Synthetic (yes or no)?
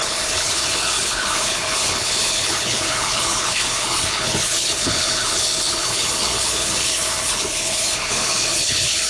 yes